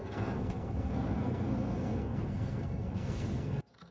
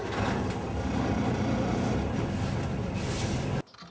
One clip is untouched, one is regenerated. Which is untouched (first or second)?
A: second